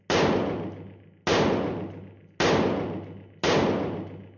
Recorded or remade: recorded